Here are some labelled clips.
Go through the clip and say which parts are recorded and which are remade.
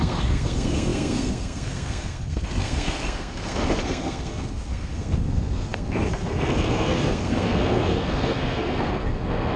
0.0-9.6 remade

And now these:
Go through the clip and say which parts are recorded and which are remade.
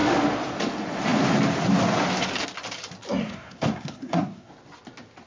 0.0-3.2 recorded; 3.2-4.5 remade; 4.5-5.3 recorded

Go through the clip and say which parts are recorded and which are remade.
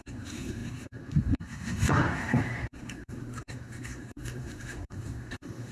0.0-5.7 remade